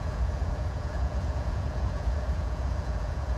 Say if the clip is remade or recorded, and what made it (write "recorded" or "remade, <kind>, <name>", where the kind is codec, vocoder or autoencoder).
remade, vocoder, Vocos